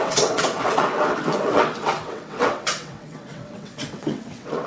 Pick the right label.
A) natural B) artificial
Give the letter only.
B